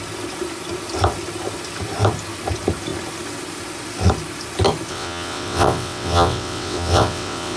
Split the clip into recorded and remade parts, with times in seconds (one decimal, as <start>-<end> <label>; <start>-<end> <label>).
0.0-4.9 recorded; 4.9-7.6 remade